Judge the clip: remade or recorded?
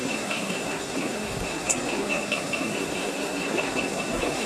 remade